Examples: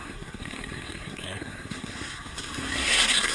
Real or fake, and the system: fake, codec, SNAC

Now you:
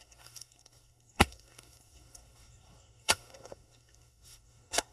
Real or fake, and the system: fake, codec, SNAC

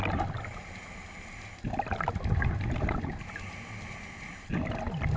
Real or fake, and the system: real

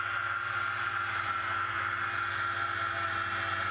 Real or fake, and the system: real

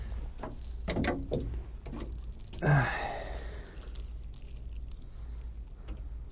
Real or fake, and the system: real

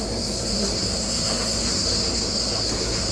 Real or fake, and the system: fake, codec, SNAC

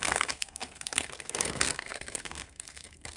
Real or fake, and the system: fake, codec, SNAC